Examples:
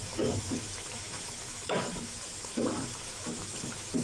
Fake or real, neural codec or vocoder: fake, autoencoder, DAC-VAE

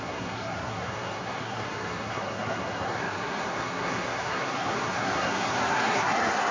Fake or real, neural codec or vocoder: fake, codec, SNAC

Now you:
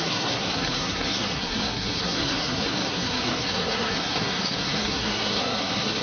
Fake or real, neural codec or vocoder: fake, codec, SNAC